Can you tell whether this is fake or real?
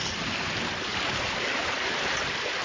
real